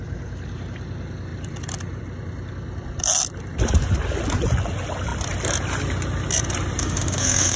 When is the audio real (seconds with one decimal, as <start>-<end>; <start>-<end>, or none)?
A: 0.0-6.8

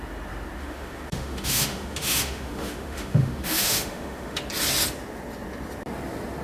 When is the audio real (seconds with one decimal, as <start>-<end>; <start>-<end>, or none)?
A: 0.0-0.6; 4.4-6.4

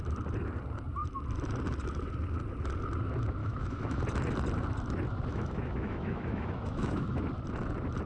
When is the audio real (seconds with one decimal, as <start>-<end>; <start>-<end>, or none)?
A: 0.0-3.4; 4.0-5.3; 7.2-8.1

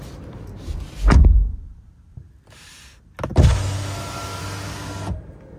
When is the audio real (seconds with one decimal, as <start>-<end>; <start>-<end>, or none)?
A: 0.0-5.6

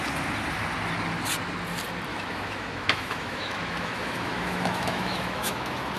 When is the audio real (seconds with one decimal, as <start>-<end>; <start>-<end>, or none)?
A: 0.0-2.1

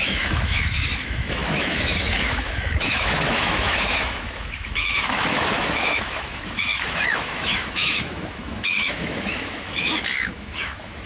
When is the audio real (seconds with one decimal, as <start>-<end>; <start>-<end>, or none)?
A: none

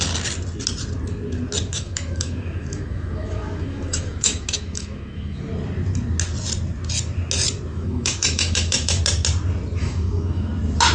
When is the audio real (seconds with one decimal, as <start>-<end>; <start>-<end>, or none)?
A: 0.0-1.7; 5.4-7.7; 9.0-9.8; 10.5-10.9